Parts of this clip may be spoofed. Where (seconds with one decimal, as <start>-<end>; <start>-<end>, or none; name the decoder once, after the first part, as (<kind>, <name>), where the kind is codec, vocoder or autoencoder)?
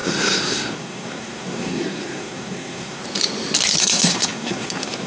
0.0-3.0 (codec, SNAC); 3.8-5.1